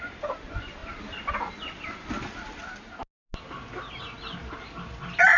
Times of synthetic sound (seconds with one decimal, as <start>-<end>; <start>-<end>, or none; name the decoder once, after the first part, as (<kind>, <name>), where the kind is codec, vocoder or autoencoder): none